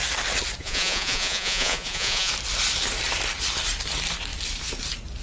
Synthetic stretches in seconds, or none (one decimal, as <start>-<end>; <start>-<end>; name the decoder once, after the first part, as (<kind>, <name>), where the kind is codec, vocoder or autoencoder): 0.6-2.3 (vocoder, Vocos)